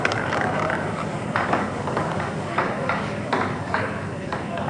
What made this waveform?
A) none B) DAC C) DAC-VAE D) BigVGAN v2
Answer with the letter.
B